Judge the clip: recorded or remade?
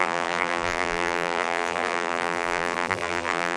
remade